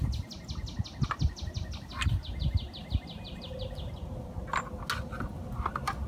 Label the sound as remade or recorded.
recorded